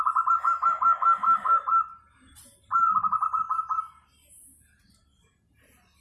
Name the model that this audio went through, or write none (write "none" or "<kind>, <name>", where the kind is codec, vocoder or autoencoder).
none